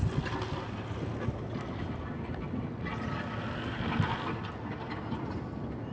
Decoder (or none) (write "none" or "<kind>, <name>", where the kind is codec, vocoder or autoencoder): none